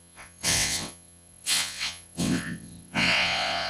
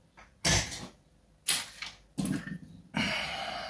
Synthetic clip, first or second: first